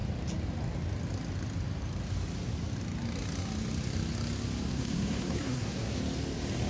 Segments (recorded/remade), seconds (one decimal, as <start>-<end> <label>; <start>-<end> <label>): 0.0-4.7 recorded; 4.7-6.0 remade; 6.0-6.7 recorded